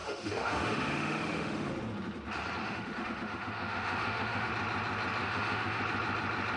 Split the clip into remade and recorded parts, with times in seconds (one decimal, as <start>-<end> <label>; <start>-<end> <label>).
0.0-1.7 remade; 1.7-2.6 recorded; 2.6-4.5 remade; 4.5-5.2 recorded; 5.2-5.8 remade; 5.8-6.6 recorded

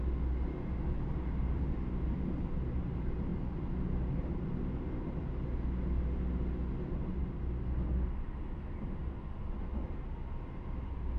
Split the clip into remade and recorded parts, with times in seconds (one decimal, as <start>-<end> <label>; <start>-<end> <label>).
0.0-11.2 recorded

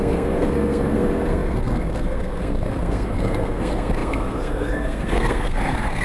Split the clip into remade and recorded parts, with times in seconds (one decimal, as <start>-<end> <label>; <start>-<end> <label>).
0.0-6.0 remade

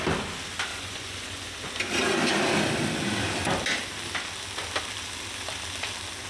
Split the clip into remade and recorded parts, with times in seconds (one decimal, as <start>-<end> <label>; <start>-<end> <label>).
0.0-0.7 recorded; 0.7-1.8 remade; 1.8-6.3 recorded

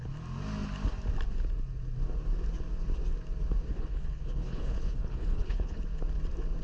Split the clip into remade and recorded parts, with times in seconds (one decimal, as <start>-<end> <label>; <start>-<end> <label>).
0.0-3.7 recorded; 3.7-5.8 remade; 5.8-6.6 recorded

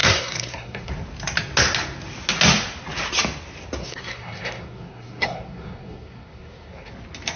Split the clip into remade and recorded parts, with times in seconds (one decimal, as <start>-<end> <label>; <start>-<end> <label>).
0.0-0.9 remade; 0.9-3.8 recorded; 3.8-6.9 remade; 6.9-7.4 recorded

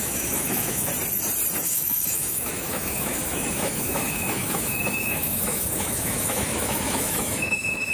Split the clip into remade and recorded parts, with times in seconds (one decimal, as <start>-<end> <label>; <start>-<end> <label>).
0.0-0.9 remade; 0.9-1.6 recorded; 1.6-7.9 remade

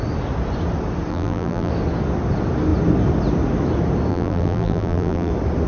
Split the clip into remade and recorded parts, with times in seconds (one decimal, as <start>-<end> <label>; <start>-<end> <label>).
0.0-1.1 recorded; 1.1-1.7 remade; 1.7-4.1 recorded; 4.1-5.3 remade; 5.3-5.7 recorded